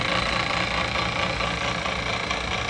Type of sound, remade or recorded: recorded